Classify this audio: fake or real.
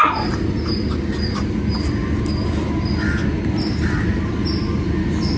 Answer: real